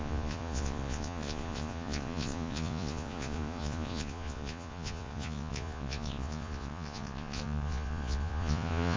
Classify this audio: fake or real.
fake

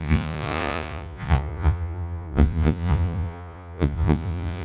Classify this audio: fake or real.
fake